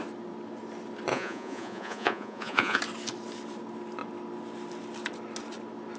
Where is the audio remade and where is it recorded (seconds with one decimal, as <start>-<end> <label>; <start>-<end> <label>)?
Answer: 0.0-1.1 recorded; 1.1-2.8 remade; 2.8-6.0 recorded